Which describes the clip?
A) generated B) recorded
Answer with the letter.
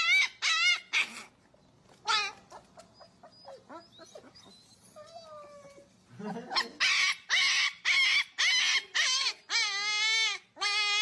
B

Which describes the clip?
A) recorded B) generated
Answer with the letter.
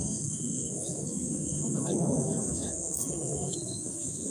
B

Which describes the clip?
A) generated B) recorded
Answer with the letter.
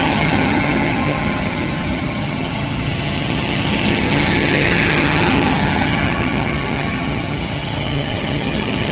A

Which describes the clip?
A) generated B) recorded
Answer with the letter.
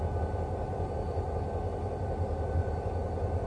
B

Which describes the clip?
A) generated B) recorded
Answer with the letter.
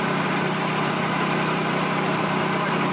A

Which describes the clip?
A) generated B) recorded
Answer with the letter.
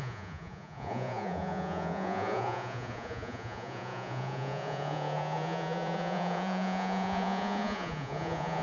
A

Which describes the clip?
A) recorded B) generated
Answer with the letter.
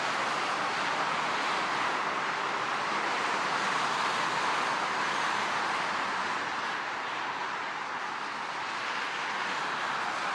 A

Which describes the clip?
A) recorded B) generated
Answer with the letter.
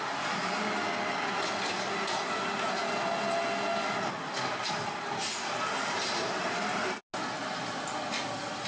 A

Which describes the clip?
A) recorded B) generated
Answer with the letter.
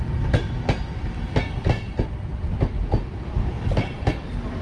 A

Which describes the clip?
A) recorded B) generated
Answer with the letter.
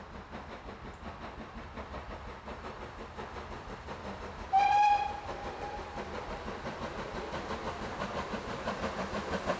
A